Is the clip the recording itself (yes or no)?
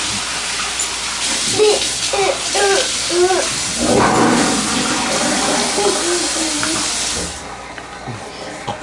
yes